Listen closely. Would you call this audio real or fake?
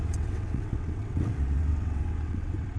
fake